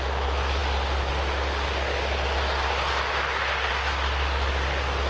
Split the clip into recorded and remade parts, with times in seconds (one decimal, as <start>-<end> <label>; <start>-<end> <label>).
0.0-5.1 recorded